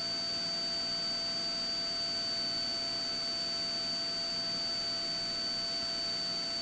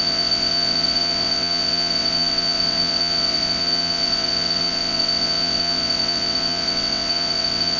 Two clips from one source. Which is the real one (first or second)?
first